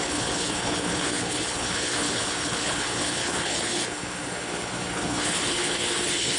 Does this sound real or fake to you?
fake